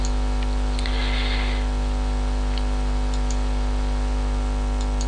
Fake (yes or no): no